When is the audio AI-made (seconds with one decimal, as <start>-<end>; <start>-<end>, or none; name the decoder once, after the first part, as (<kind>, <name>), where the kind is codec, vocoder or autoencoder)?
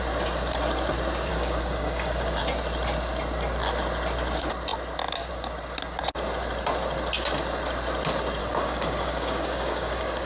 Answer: 1.3-2.4 (codec, DAC); 8.4-10.3